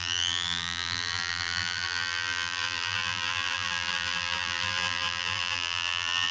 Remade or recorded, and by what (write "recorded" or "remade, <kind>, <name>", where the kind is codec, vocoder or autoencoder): remade, vocoder, BigVGAN v2